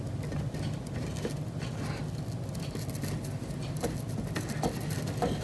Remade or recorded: recorded